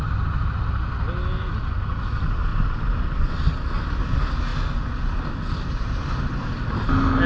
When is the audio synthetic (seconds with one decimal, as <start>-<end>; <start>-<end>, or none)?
none